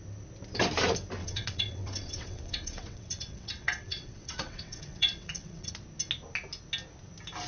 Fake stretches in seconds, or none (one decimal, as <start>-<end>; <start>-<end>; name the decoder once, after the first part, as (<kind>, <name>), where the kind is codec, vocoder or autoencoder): 1.2-5.7 (vocoder, WaveNeXt)